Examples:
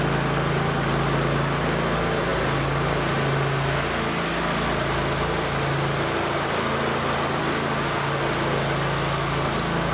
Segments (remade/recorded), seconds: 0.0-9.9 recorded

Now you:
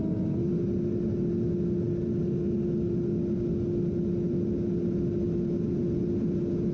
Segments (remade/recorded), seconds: 0.0-6.7 recorded

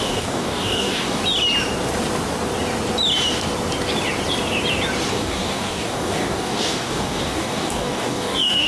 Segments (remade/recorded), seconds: 0.0-1.2 remade; 1.2-5.1 recorded; 5.1-8.7 remade